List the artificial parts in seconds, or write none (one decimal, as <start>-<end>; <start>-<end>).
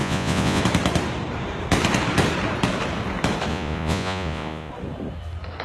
0.0-0.6; 3.5-4.7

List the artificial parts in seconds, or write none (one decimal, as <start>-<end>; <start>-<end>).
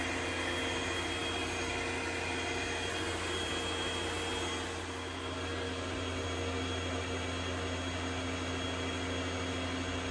none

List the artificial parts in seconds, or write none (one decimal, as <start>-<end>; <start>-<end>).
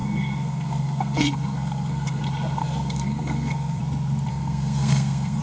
0.0-2.2; 2.6-3.8; 4.3-5.4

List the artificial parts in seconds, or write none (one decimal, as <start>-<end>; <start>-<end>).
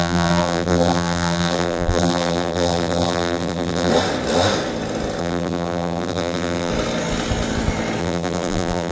0.0-3.9; 5.2-6.7; 8.0-8.9